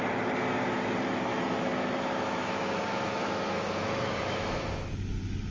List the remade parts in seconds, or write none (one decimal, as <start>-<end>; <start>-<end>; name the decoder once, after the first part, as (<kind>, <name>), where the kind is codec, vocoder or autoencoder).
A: 1.3-4.6 (autoencoder, DAC-VAE)